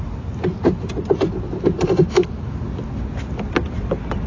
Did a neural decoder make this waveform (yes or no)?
no